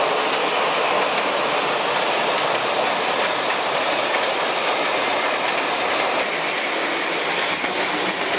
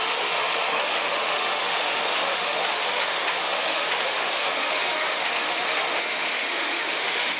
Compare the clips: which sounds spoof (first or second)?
second